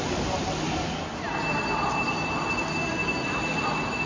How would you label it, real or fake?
real